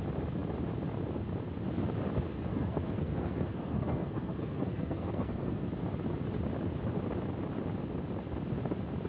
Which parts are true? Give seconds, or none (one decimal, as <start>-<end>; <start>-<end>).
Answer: 0.0-2.5; 5.7-9.1